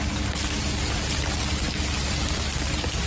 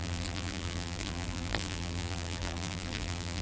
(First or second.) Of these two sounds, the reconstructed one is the second